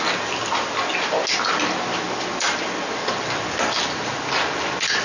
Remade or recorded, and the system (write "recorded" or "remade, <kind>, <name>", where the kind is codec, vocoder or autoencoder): recorded